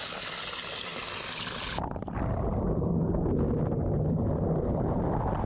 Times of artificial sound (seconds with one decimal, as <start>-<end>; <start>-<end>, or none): none